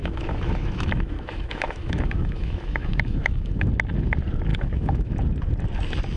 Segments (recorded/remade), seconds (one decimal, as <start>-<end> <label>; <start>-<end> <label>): 0.0-3.7 remade; 3.7-4.5 recorded; 4.5-5.1 remade; 5.1-6.2 recorded